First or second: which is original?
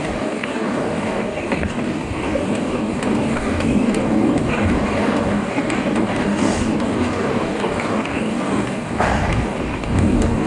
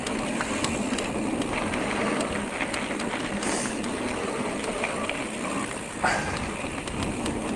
second